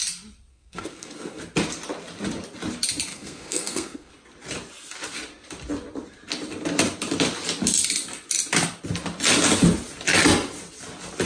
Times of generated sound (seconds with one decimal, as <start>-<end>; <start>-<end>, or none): 0.5-1.4; 3.1-4.1